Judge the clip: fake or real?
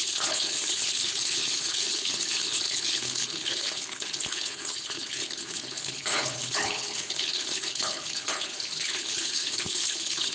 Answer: fake